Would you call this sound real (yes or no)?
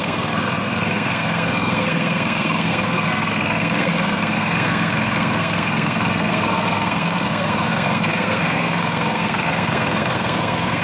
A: no